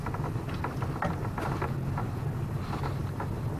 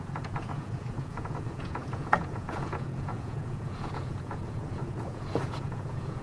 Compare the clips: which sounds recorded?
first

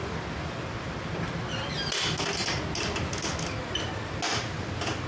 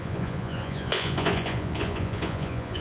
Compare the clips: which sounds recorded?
first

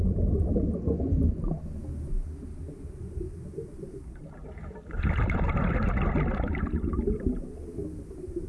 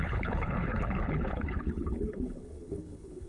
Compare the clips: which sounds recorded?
first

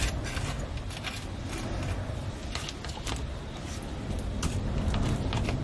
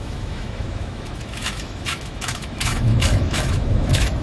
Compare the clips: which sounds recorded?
first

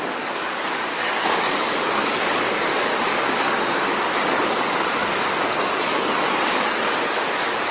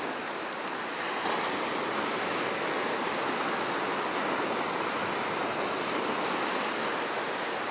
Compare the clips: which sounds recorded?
second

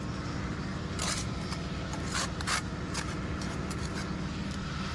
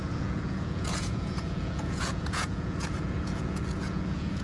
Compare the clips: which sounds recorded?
first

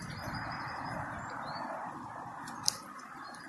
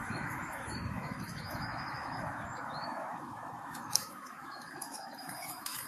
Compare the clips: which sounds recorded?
first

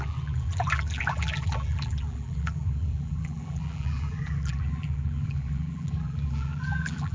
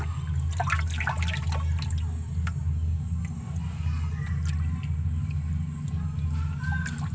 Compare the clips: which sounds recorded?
second